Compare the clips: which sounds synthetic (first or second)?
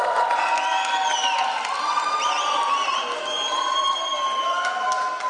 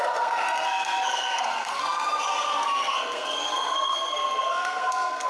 second